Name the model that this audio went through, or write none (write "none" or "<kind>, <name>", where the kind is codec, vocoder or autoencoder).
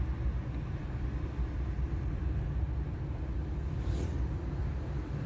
none